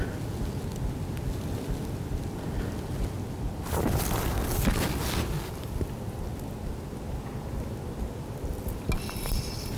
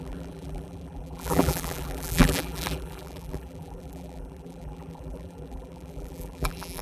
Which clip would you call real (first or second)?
first